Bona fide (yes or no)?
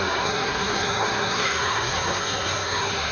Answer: no